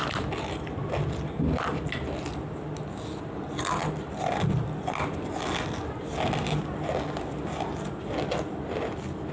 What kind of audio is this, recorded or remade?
recorded